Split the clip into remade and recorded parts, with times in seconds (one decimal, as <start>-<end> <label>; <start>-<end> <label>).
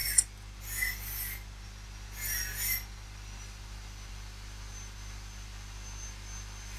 0.0-6.8 recorded